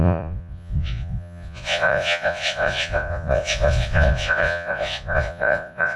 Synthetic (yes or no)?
yes